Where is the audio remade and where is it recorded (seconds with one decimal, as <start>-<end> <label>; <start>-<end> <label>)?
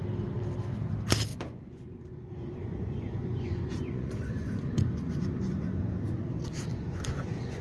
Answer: 0.0-1.3 recorded; 1.3-5.9 remade; 5.9-6.7 recorded; 6.7-7.6 remade